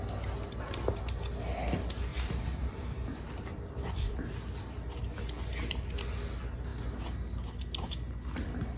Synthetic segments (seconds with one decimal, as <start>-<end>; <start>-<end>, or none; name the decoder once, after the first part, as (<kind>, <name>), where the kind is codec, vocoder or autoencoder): 2.1-5.9 (vocoder, BigVGAN v2)